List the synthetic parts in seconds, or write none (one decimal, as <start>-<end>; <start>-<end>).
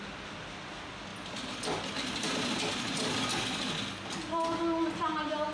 none